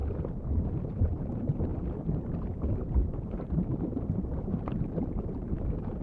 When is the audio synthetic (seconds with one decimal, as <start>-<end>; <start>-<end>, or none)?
0.8-1.7; 2.2-6.0